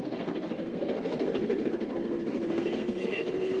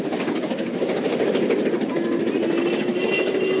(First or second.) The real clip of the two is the second